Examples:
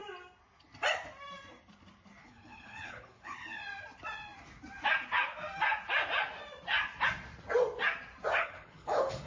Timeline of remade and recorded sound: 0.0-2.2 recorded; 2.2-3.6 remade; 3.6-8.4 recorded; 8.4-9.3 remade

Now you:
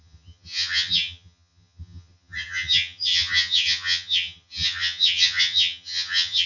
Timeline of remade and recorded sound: 0.0-6.5 remade